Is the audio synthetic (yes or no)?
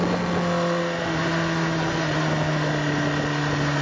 no